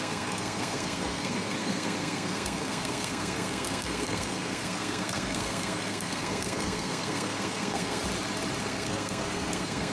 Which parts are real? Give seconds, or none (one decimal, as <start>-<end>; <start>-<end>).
8.0-8.6